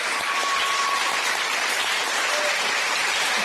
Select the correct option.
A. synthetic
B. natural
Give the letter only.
B